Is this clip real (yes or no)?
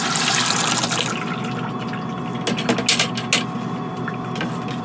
yes